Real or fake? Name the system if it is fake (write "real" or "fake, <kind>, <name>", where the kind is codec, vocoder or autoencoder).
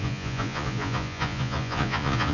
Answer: fake, vocoder, Vocos